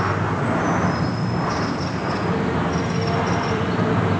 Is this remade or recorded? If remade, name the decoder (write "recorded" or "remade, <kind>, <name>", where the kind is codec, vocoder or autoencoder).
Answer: recorded